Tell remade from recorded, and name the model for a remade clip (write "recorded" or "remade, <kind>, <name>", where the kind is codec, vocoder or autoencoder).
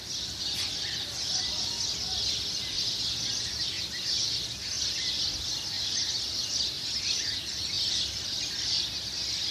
recorded